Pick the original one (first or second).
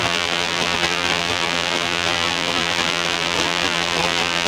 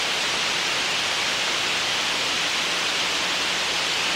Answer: second